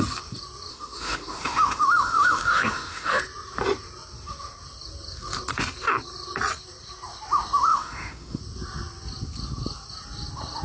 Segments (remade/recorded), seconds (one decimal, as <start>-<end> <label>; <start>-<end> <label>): 0.0-0.7 recorded; 0.7-3.2 remade; 3.2-7.7 recorded; 7.7-8.4 remade; 8.4-10.6 recorded